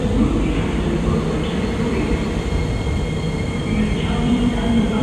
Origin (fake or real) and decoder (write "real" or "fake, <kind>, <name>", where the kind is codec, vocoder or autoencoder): fake, vocoder, BigVGAN v2